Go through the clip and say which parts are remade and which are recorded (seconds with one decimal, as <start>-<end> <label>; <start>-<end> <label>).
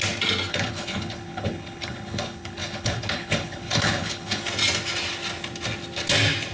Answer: 0.0-0.5 recorded; 0.5-4.4 remade; 4.4-6.5 recorded